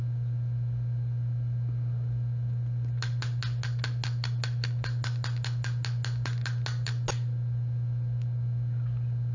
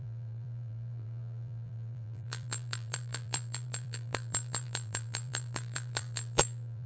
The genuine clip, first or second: first